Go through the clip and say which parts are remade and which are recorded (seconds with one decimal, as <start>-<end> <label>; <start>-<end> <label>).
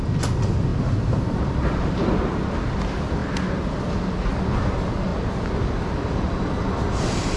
0.0-0.7 recorded; 0.7-2.1 remade; 2.1-7.4 recorded